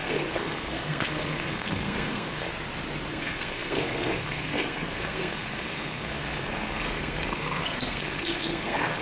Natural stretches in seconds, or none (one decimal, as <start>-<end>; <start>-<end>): 2.5-3.1